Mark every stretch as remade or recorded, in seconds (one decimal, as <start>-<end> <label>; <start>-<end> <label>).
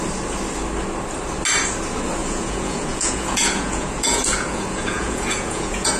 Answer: 0.0-2.2 recorded; 2.2-6.0 remade